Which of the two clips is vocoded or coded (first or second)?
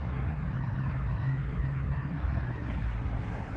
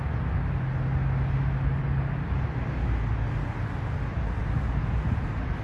first